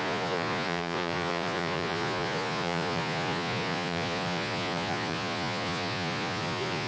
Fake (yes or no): yes